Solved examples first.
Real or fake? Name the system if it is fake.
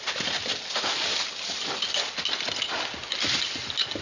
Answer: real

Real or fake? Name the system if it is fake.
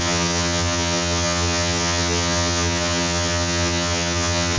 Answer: fake, vocoder, HiFi-GAN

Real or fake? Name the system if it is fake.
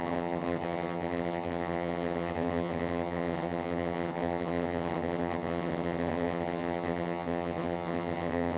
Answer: fake, vocoder, HiFi-GAN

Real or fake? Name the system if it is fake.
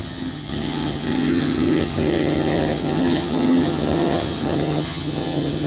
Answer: fake, vocoder, HiFi-GAN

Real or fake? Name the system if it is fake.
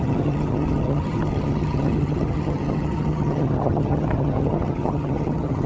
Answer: fake, vocoder, HiFi-GAN